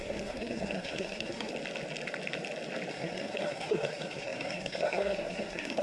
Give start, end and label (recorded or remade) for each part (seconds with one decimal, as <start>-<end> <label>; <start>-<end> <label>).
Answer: 0.0-1.5 remade; 1.5-2.9 recorded; 2.9-5.8 remade